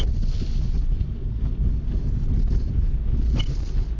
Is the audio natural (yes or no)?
yes